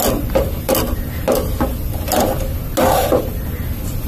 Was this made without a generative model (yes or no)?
yes